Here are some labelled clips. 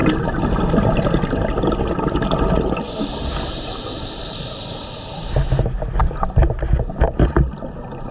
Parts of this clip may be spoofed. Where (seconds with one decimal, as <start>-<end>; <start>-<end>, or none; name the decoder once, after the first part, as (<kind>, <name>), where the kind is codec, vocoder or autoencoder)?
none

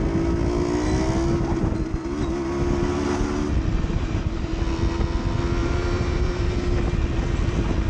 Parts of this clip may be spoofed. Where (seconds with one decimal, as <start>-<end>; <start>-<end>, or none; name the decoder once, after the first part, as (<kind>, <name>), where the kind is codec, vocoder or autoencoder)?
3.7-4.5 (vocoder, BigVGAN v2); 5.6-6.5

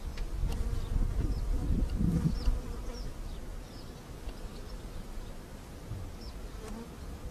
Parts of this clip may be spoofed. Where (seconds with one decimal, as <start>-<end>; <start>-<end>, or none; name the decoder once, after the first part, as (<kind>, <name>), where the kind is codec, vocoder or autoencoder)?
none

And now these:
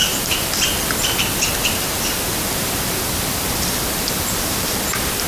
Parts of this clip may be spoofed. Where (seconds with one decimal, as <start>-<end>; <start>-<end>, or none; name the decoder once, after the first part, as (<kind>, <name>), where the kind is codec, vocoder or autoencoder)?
0.0-0.6 (vocoder, BigVGAN v2); 1.6-4.8

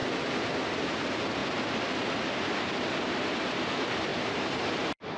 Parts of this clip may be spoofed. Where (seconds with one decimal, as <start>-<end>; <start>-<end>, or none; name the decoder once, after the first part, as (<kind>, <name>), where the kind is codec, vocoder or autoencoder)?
4.1-4.7 (vocoder, BigVGAN v2)